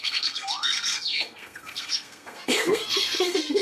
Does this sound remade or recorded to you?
remade